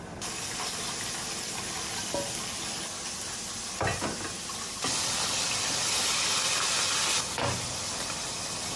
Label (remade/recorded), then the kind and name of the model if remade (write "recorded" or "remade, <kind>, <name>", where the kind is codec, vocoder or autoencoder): recorded